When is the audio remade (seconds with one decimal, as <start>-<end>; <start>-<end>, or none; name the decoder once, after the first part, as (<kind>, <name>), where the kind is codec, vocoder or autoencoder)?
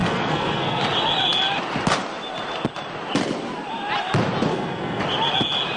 0.0-0.8 (codec, SNAC); 4.5-5.0